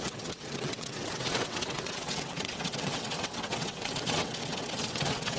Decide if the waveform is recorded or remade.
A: remade